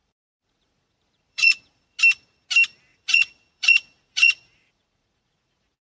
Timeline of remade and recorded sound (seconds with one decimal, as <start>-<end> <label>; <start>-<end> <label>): 0.0-2.0 remade; 2.0-2.9 recorded; 2.9-5.8 remade